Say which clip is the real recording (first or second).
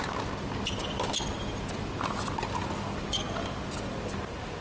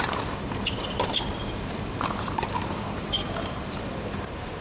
first